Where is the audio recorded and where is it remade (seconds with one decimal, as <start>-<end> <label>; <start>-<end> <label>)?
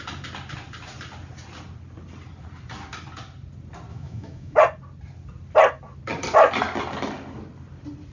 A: 0.0-3.9 recorded; 3.9-4.6 remade; 4.6-8.1 recorded